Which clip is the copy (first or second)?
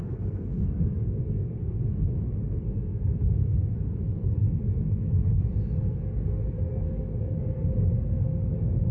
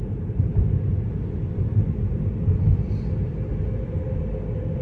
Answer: first